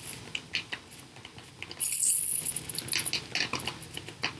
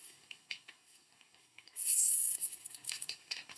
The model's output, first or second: second